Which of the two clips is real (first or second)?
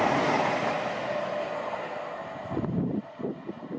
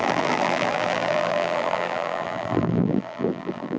first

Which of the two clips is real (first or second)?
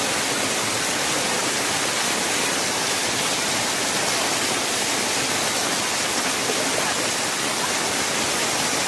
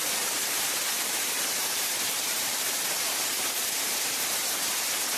first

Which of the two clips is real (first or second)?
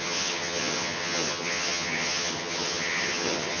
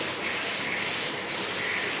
second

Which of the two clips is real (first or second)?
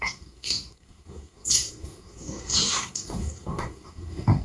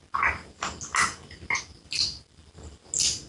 second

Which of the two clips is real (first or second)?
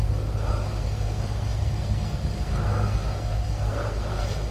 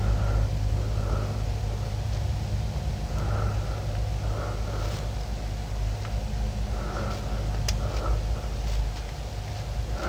second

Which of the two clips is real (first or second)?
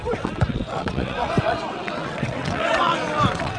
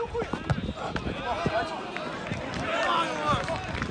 second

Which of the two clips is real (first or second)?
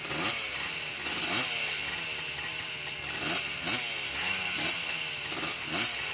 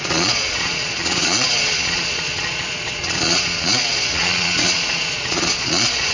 first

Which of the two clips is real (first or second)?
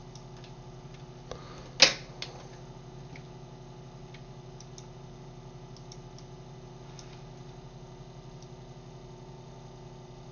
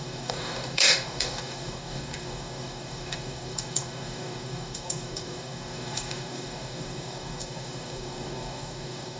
first